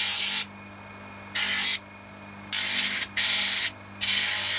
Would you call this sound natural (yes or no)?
yes